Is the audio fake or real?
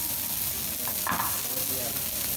real